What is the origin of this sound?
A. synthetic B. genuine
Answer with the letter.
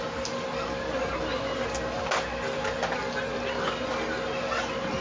B